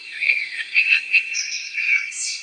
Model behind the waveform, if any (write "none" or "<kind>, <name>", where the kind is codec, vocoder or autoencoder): codec, SNAC